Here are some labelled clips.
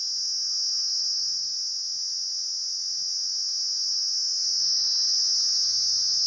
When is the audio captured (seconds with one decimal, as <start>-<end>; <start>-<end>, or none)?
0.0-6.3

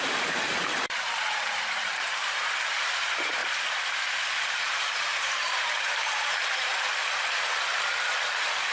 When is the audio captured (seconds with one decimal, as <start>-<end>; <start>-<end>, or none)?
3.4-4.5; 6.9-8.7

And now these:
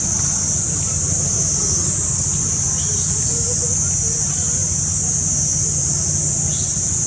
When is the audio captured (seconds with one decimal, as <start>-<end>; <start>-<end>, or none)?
0.0-7.1